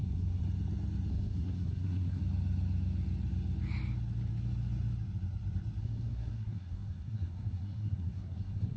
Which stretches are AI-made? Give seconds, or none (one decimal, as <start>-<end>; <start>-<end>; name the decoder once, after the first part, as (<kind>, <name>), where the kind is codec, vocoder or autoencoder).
0.0-0.4 (codec, SNAC); 1.1-2.2; 5.8-8.8